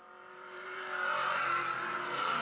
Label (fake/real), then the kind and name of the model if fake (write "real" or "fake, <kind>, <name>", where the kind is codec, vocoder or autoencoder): real